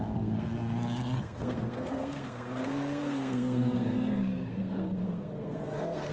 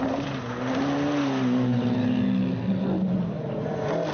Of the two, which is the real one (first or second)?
second